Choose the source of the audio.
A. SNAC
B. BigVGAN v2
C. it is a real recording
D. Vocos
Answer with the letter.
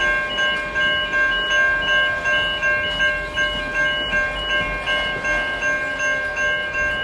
C